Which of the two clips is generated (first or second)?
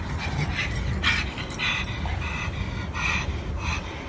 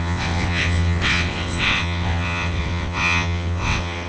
second